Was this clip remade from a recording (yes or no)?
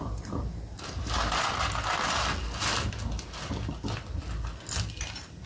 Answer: no